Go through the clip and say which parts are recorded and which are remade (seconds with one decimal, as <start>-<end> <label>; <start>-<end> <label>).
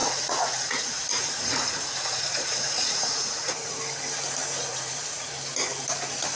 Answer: 0.0-3.8 remade; 3.8-4.7 recorded; 4.7-5.3 remade; 5.3-6.4 recorded